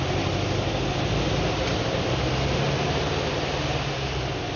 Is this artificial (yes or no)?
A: no